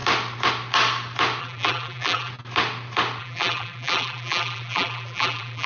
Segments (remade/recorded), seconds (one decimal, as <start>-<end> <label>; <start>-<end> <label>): 0.0-1.4 recorded; 1.4-2.3 remade; 2.3-3.2 recorded; 3.2-5.7 remade